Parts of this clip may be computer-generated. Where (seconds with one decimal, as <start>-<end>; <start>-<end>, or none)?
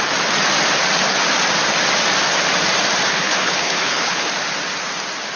3.1-4.3